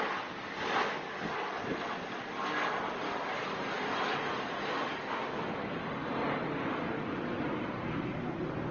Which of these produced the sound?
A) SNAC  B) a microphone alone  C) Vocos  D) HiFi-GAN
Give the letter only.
B